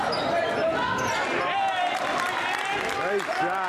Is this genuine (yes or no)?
yes